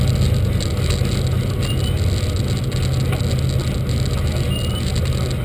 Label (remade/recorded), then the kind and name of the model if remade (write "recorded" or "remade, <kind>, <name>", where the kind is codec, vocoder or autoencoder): recorded